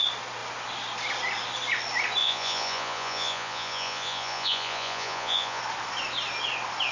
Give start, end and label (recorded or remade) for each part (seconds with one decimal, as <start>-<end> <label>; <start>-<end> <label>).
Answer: 0.0-2.2 recorded; 2.2-5.6 remade; 5.6-6.9 recorded